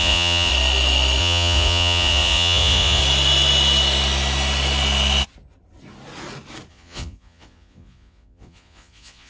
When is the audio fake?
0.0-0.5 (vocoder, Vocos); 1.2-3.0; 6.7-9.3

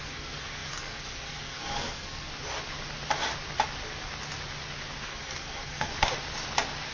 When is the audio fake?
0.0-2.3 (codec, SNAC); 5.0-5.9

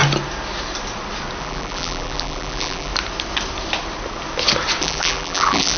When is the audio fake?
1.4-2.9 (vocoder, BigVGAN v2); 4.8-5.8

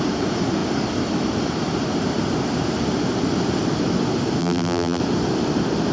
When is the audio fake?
4.4-5.0 (vocoder, BigVGAN v2)

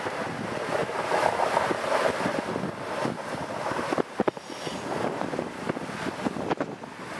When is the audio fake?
none

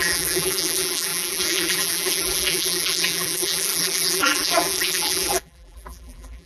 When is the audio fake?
0.0-6.5 (vocoder, BigVGAN v2)